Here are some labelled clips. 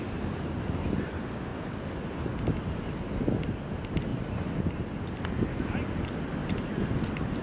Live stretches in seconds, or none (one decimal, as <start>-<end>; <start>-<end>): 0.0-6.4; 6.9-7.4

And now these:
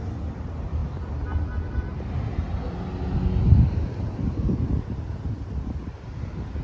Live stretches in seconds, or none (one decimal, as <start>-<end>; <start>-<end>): 0.0-6.6

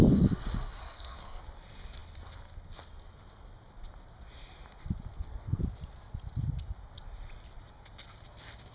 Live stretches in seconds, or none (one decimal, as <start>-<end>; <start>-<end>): 0.0-0.8; 1.4-5.1; 5.6-8.7